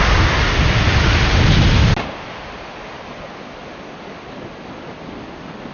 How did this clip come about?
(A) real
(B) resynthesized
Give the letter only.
A